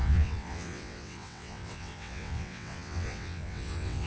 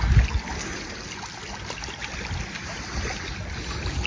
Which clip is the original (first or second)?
second